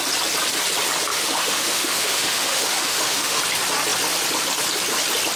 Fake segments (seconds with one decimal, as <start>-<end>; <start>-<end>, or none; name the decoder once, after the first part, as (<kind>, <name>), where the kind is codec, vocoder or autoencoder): 1.1-3.4 (autoencoder, DAC-VAE)